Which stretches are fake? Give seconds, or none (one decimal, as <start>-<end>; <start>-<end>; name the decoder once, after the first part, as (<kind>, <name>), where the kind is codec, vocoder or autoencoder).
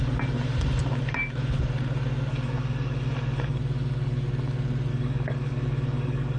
2.3-3.6 (codec, DAC); 4.9-6.4